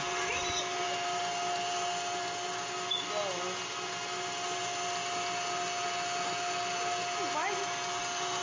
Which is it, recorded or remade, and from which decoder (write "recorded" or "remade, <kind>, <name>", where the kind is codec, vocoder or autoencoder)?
recorded